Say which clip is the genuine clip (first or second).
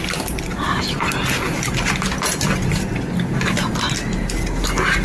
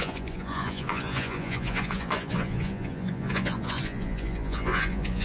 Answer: first